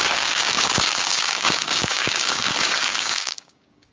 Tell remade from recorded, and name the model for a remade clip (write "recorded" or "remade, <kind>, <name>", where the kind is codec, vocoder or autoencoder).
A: remade, codec, DAC